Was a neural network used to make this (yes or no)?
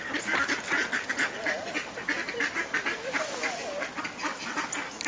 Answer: no